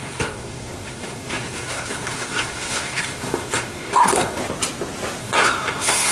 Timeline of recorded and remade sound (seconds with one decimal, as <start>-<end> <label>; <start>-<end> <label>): 0.0-4.4 remade; 4.4-5.2 recorded; 5.2-6.1 remade